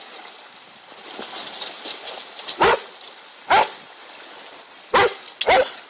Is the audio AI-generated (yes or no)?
no